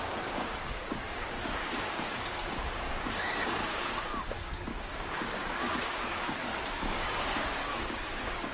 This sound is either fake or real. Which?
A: fake